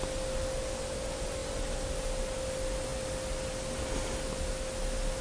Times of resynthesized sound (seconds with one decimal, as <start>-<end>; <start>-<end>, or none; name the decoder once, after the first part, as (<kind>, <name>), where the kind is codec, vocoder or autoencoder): none